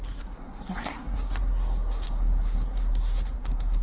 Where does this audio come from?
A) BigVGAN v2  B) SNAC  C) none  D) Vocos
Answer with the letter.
B